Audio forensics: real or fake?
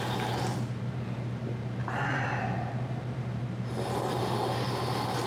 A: real